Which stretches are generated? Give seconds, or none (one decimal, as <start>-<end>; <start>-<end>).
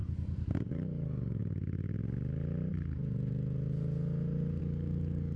0.7-1.4; 4.6-5.4